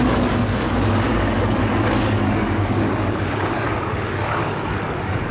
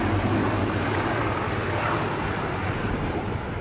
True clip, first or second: second